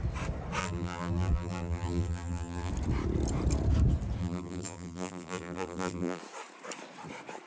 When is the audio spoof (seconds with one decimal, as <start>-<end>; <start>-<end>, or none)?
0.6-2.7; 4.2-6.2